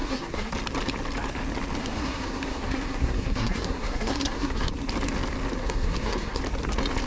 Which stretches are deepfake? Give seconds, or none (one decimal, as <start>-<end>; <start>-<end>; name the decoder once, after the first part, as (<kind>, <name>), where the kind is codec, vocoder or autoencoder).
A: 0.0-0.5 (codec, SNAC); 1.8-4.7; 5.6-6.4